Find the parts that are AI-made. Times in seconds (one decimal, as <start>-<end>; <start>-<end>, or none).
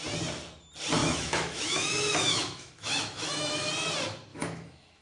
1.0-3.7; 4.3-5.0